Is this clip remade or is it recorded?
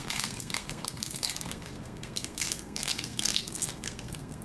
remade